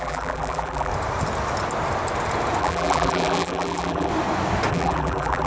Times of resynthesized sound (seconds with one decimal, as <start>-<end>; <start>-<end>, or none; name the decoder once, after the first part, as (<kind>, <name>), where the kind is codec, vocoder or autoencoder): 0.0-0.9 (vocoder, BigVGAN v2); 2.6-4.1; 4.7-5.5